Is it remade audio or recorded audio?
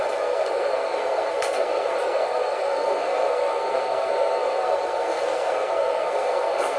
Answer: remade